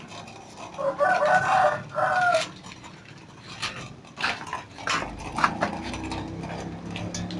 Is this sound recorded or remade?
recorded